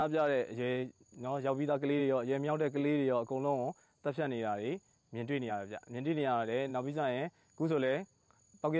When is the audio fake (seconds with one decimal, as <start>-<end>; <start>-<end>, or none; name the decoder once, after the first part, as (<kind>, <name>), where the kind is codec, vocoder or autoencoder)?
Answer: 6.7-7.7 (autoencoder, DAC-VAE)